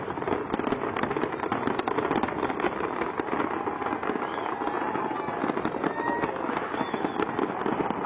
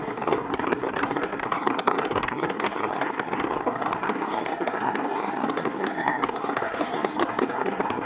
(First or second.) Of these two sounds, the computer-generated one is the second